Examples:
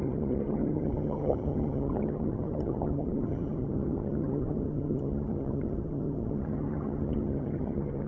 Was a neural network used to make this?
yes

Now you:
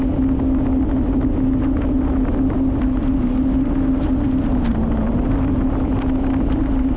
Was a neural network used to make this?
no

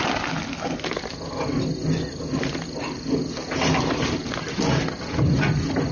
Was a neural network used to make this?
no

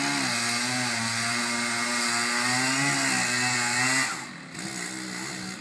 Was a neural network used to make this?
no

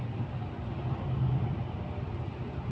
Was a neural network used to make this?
no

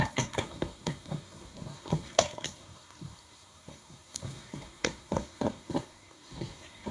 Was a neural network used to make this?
yes